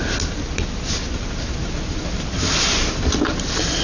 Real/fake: real